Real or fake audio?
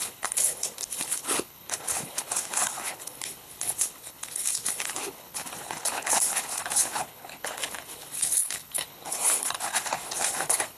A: fake